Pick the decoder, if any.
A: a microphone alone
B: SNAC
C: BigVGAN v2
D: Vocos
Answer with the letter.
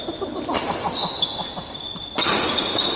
A